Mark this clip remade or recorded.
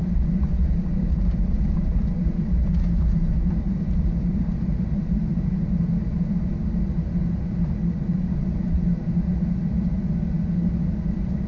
remade